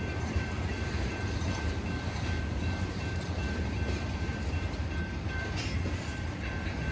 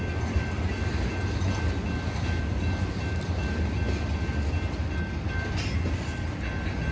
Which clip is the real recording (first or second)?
second